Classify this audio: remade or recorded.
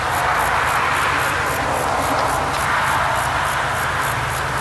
recorded